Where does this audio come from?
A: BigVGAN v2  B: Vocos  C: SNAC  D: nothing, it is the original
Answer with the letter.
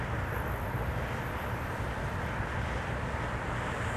A